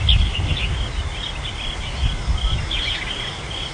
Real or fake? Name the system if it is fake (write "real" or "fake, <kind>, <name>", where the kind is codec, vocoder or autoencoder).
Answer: real